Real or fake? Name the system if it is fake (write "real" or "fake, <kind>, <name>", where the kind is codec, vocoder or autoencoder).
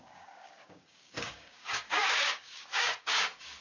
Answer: fake, codec, DAC